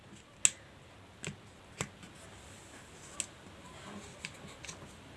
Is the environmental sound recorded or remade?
recorded